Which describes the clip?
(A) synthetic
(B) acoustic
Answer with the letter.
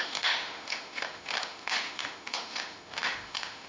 A